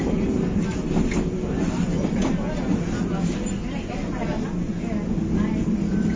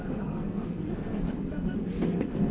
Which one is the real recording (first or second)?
first